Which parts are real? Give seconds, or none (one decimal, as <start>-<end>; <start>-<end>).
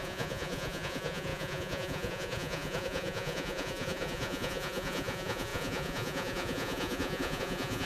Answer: none